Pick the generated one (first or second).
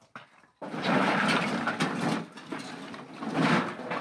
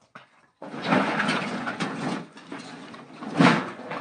second